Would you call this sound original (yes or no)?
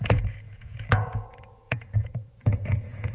no